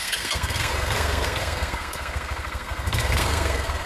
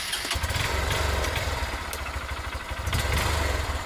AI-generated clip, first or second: first